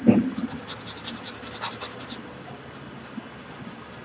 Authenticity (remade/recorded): recorded